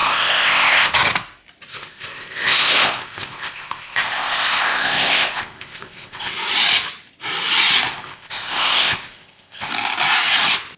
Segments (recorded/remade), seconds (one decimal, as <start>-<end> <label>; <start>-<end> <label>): 0.0-0.9 remade; 0.9-1.7 recorded; 1.7-6.3 remade; 6.3-7.9 recorded; 7.9-9.7 remade; 9.7-10.8 recorded